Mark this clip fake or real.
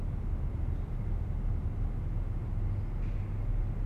real